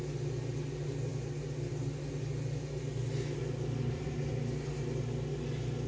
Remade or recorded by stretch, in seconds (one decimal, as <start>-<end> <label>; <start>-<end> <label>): 0.0-5.9 recorded